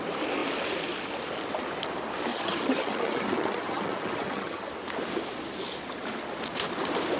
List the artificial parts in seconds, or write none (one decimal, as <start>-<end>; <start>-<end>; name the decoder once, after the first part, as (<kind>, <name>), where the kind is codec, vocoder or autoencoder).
2.3-4.7 (vocoder, HiFi-GAN)